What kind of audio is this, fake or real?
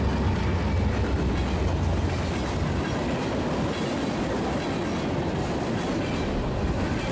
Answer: real